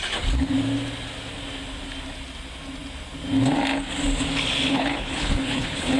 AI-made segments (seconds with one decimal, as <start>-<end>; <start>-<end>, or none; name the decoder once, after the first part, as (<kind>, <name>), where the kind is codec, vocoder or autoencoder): 4.7-6.0 (codec, HILCodec)